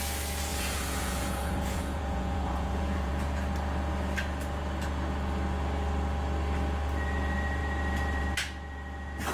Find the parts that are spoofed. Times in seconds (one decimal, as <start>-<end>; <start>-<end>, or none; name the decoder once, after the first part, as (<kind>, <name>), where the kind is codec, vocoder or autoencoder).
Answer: 0.5-3.1 (vocoder, Vocos)